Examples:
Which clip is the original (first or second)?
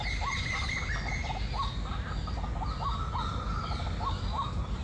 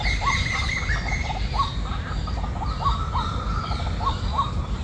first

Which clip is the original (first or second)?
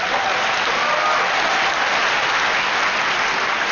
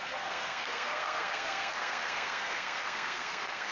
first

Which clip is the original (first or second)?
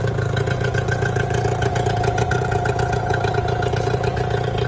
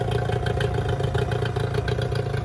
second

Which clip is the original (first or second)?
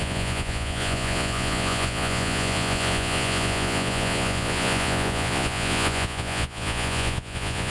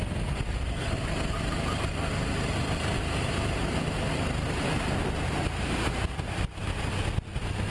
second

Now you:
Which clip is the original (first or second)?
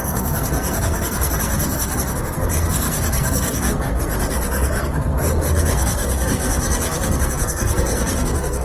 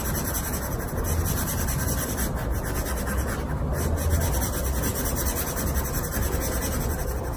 second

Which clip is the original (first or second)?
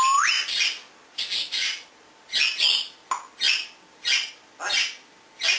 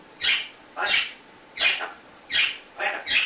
first